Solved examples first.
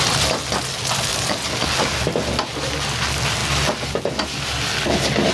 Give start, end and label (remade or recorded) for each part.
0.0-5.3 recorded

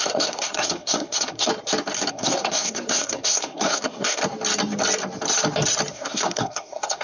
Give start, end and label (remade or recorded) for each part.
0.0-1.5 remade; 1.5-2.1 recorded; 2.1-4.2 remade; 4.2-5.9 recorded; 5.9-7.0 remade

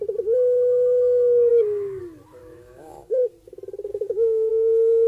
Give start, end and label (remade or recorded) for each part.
0.0-1.5 recorded; 1.5-2.0 remade; 2.0-2.4 recorded; 2.4-3.3 remade; 3.3-3.9 recorded; 3.9-4.5 remade; 4.5-5.1 recorded

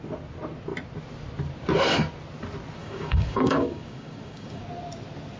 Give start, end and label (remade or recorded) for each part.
0.0-2.8 recorded; 2.8-4.6 remade; 4.6-5.4 recorded